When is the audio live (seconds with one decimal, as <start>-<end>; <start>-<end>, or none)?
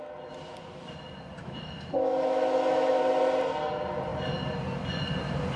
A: 0.0-1.4; 3.0-5.6